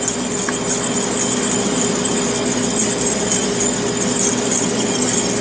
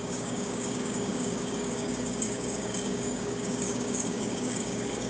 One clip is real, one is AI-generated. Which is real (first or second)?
first